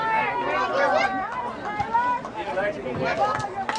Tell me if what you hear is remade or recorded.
recorded